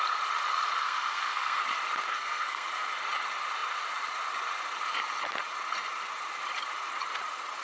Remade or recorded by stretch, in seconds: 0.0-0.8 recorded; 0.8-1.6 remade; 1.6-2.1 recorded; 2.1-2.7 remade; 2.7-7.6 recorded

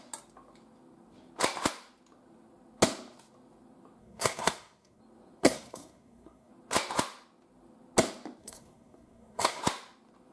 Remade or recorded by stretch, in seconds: 0.0-4.0 recorded; 4.0-5.0 remade; 5.0-5.4 recorded; 5.4-6.5 remade; 6.5-8.4 recorded; 8.4-9.6 remade; 9.6-10.3 recorded

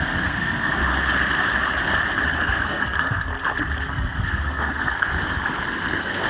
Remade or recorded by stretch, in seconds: 0.0-0.8 remade; 0.8-2.4 recorded; 2.4-3.3 remade; 3.3-3.9 recorded; 3.9-5.1 remade; 5.1-5.7 recorded; 5.7-6.3 remade